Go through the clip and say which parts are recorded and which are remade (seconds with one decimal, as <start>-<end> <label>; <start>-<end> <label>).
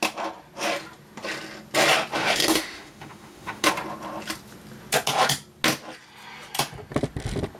0.0-2.2 recorded; 2.2-3.7 remade; 3.7-7.6 recorded